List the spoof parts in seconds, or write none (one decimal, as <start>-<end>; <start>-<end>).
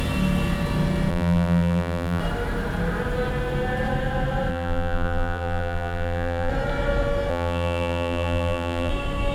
1.1-2.2; 4.5-6.5; 7.3-8.9